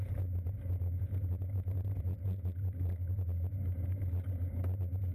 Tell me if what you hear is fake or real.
real